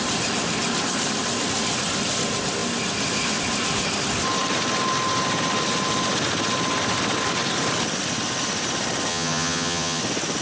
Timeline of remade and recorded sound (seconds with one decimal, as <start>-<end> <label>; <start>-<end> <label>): 0.0-9.1 recorded; 9.1-10.0 remade; 10.0-10.4 recorded